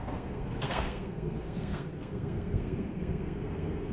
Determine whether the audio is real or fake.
fake